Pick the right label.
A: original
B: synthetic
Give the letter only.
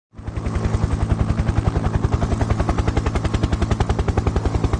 A